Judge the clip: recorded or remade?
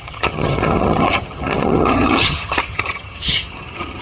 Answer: remade